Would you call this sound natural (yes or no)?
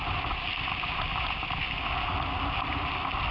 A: yes